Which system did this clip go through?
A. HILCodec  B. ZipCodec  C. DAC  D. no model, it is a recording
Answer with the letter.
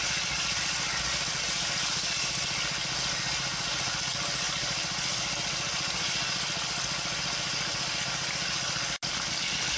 D